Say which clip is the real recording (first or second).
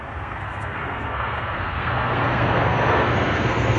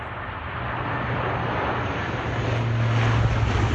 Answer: second